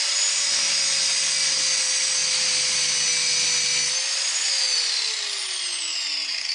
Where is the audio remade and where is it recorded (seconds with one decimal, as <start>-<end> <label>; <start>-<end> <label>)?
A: 0.0-0.5 remade; 0.5-6.5 recorded